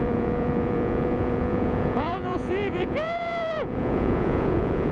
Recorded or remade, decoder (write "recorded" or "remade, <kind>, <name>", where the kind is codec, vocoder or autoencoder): remade, vocoder, Vocos